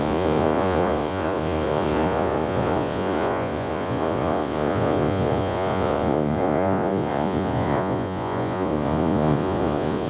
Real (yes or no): no